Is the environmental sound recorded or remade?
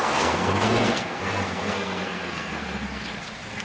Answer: remade